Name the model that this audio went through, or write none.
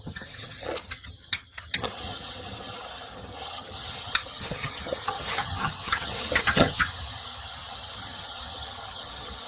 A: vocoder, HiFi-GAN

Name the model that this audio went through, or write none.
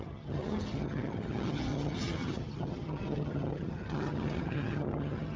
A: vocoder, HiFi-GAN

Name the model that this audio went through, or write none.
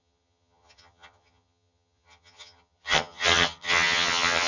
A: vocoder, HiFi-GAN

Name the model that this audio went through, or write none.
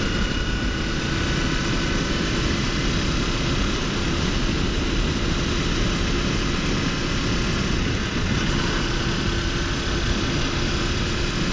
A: none